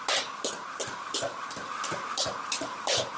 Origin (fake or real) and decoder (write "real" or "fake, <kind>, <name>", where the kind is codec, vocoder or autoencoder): real